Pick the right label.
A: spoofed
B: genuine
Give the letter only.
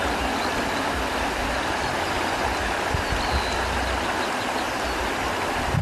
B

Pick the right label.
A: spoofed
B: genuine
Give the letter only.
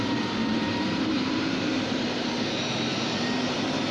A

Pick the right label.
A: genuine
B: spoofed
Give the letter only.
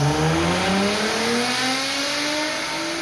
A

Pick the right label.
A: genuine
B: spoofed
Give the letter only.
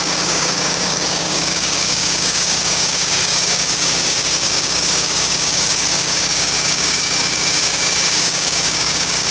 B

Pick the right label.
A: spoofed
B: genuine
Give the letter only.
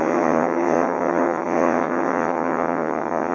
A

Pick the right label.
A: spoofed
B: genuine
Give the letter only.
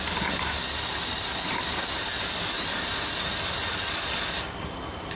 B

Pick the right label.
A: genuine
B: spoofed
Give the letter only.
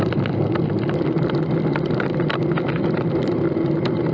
A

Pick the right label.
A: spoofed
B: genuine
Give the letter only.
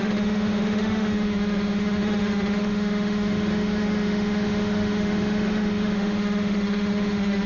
A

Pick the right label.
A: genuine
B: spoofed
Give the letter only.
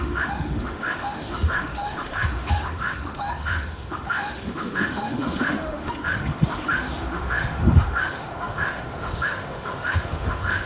B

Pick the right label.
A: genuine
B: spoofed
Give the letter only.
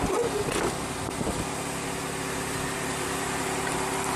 A